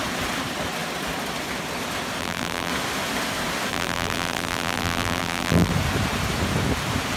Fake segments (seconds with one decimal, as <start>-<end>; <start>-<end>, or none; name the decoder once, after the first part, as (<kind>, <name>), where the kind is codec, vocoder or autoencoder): 2.2-2.7 (vocoder, BigVGAN v2); 3.7-5.7